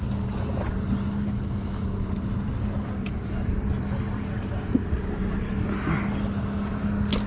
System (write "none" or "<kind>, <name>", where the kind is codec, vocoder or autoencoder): none